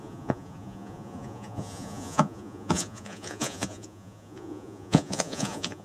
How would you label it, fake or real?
fake